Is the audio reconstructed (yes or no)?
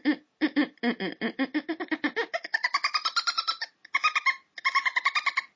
no